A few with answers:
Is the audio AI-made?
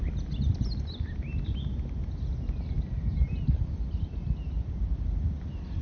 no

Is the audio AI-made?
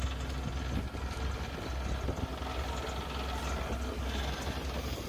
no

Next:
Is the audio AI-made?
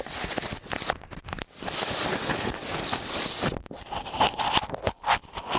no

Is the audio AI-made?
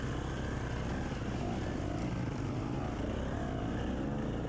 no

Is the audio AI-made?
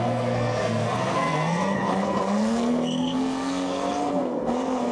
yes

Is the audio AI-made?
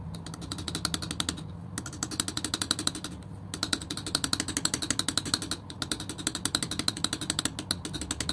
no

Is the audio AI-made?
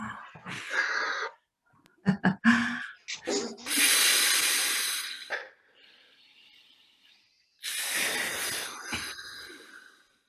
no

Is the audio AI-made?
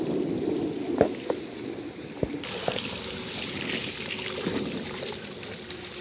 no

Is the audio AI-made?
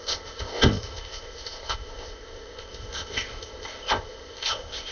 yes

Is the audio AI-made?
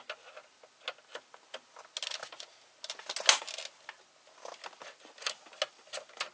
no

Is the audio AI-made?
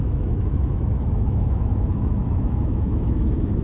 yes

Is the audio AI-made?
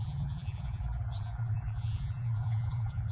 yes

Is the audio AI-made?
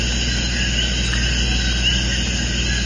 no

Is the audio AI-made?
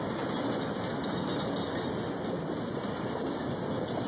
no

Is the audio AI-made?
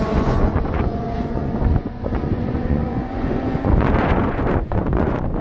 yes